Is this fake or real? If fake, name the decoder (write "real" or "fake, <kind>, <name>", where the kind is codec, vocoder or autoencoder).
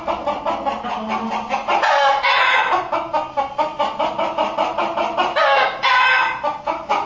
real